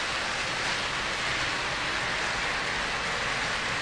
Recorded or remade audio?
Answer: recorded